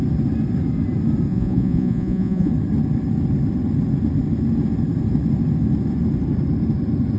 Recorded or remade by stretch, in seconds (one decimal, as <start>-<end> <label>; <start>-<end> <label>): 0.0-1.3 recorded; 1.3-2.5 remade; 2.5-7.2 recorded